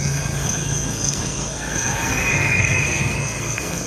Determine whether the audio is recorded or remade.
remade